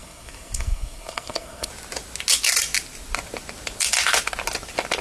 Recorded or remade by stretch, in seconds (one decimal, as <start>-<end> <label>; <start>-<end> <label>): 0.0-1.7 remade; 1.7-5.0 recorded